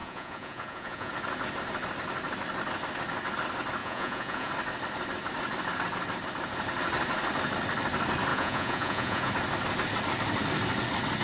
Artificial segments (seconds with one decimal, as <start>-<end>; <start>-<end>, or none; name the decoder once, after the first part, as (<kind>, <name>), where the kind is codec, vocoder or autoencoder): 0.0-1.1 (vocoder, Vocos); 3.8-4.5; 8.3-9.3